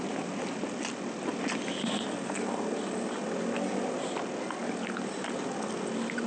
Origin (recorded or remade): recorded